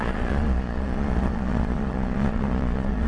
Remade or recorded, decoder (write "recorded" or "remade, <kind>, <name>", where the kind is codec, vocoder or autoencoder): remade, vocoder, Vocos